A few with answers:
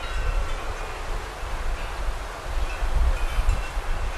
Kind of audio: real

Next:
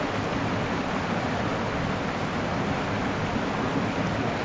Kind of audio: real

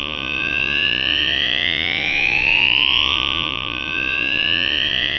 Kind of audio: fake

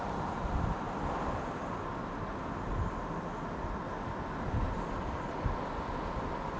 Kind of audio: real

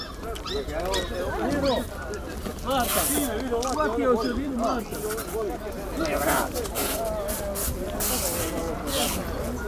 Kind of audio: real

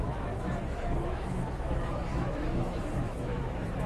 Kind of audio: fake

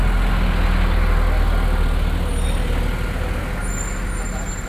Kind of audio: real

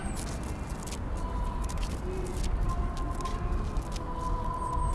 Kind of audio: real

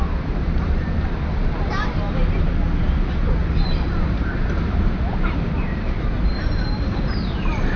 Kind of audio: fake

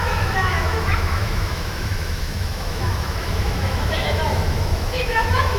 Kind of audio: fake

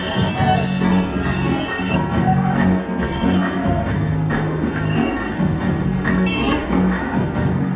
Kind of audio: fake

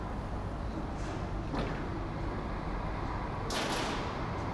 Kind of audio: real